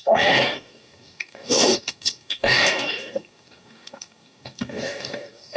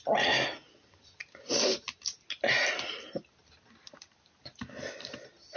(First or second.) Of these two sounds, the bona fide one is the second